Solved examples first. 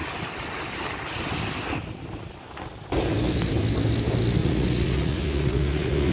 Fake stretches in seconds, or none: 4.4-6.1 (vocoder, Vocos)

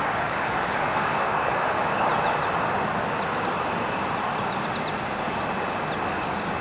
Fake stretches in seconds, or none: 0.0-2.1 (codec, DAC); 6.1-6.6

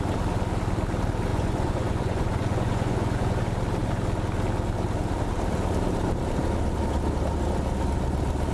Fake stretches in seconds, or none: 1.3-3.4 (vocoder, Vocos)

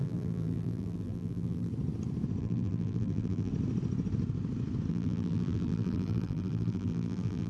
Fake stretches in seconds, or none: 0.0-1.7 (vocoder, BigVGAN v2); 2.4-3.5; 4.9-7.5

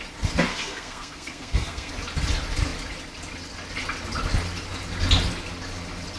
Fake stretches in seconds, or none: 0.5-1.9 (codec, SNAC)

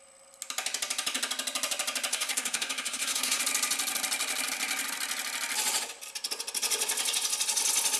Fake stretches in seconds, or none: 2.1-3.4 (codec, SNAC)

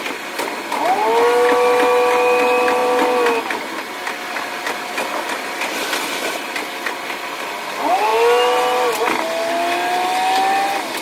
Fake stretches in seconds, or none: none

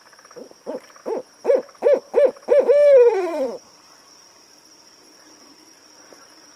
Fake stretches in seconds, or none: 0.0-1.0 (vocoder, BigVGAN v2); 2.1-6.6